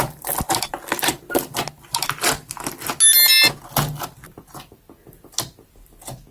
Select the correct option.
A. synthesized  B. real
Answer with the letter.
B